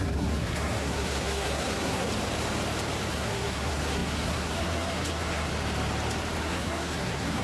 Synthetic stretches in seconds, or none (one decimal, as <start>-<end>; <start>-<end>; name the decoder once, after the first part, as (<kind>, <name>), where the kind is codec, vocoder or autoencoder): 0.0-2.1 (codec, SNAC); 3.1-5.5; 6.4-7.4